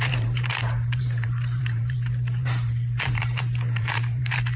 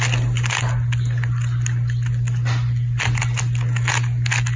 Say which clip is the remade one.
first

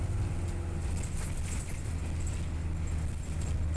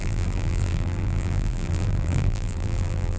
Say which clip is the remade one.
second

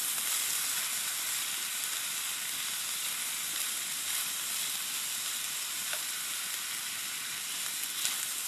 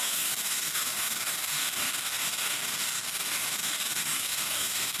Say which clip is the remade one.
second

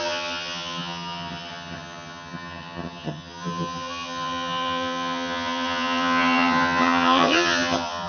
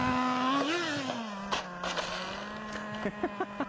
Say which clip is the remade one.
first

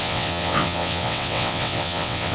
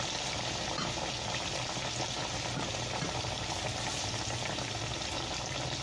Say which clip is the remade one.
first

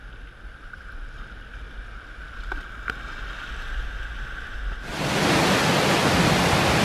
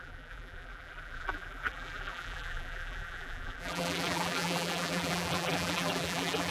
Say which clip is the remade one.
second